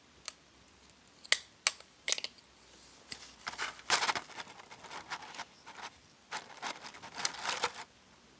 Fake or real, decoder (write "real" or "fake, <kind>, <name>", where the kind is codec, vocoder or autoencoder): real